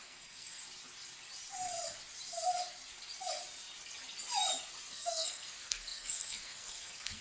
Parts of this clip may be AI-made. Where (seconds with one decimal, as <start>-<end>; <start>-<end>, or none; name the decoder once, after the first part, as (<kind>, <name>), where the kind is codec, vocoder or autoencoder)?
0.0-0.6 (codec, SNAC); 4.9-7.2